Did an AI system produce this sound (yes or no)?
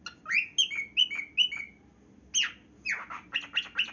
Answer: no